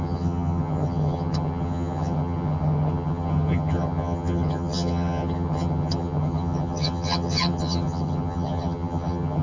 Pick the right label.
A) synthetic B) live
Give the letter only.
A